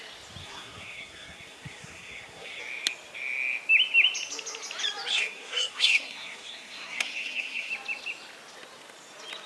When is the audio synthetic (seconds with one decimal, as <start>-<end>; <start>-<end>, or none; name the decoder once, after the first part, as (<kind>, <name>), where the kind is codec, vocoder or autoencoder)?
0.4-2.6 (codec, SNAC); 5.1-7.7